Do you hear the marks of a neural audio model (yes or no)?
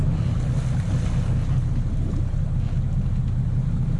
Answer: no